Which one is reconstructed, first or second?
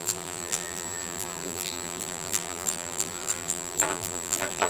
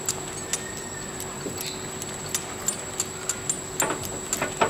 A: first